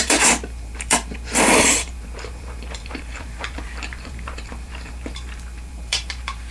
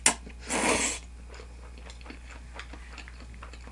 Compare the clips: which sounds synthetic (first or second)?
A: first